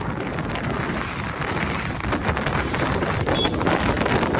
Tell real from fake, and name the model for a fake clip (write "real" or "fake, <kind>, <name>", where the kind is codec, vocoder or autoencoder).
real